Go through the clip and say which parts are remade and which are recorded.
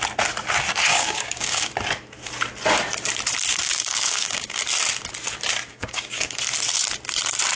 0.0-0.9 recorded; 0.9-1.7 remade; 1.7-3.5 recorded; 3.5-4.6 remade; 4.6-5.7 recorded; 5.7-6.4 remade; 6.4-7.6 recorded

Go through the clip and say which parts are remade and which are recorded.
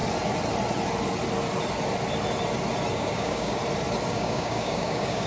0.0-2.9 recorded; 2.9-3.6 remade; 3.6-4.1 recorded; 4.1-5.3 remade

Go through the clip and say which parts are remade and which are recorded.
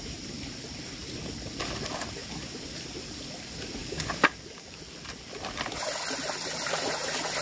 0.0-3.8 recorded; 3.8-4.8 remade; 4.8-7.4 recorded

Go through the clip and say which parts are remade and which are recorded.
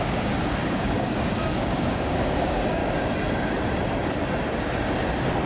0.0-2.8 remade; 2.8-5.5 recorded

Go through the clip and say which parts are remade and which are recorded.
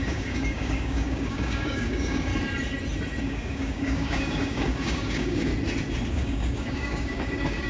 0.0-2.3 remade; 2.3-3.2 recorded; 3.2-5.5 remade; 5.5-6.1 recorded; 6.1-7.7 remade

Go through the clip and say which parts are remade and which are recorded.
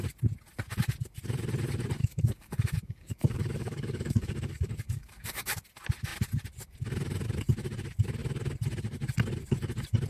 0.0-2.0 recorded; 2.0-5.6 remade; 5.6-10.1 recorded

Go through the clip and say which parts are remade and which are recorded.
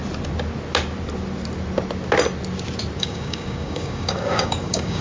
0.0-3.0 recorded; 3.0-5.0 remade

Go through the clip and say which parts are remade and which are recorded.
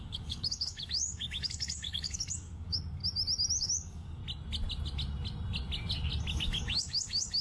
0.0-3.0 remade; 3.0-3.6 recorded; 3.6-4.2 remade; 4.2-6.4 recorded; 6.4-7.4 remade